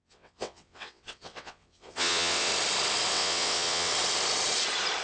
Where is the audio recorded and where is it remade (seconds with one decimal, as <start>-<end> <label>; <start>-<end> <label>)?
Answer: 0.0-2.5 remade; 2.5-3.1 recorded; 3.1-3.9 remade; 3.9-5.0 recorded